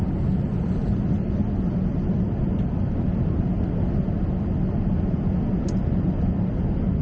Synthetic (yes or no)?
no